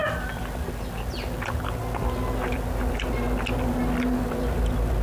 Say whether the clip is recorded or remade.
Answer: recorded